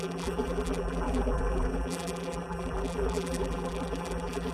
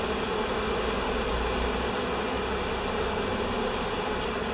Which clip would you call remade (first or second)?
first